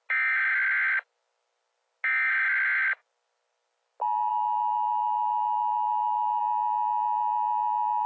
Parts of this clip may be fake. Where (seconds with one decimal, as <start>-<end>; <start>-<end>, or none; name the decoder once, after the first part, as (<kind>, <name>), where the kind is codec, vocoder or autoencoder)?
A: 4.3-6.4 (autoencoder, DAC-VAE)